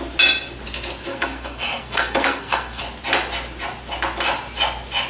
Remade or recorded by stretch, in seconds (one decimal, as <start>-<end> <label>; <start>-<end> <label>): 0.0-1.1 recorded; 1.1-2.8 remade; 2.8-5.1 recorded